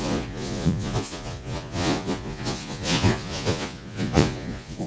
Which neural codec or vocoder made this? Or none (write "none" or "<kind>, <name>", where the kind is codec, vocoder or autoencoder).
vocoder, Vocos